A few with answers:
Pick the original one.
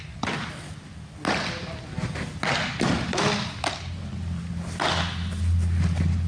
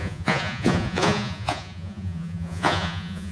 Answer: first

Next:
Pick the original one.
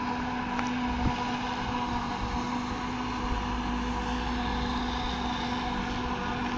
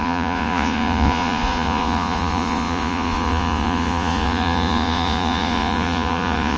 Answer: first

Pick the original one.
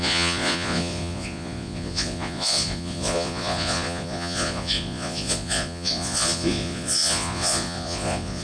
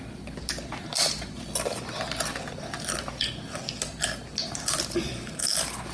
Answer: second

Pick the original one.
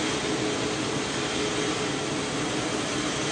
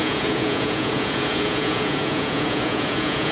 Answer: first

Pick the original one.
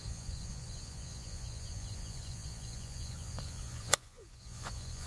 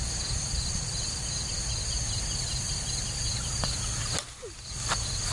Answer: second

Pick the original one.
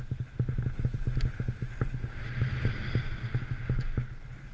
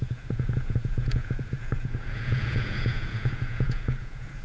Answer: first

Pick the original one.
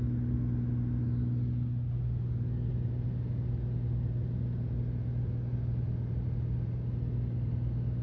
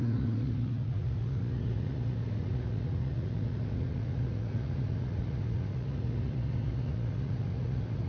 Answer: first